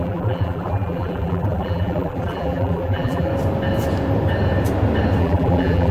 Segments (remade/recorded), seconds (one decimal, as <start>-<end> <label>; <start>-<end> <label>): 0.0-3.3 remade; 3.3-5.2 recorded; 5.2-5.9 remade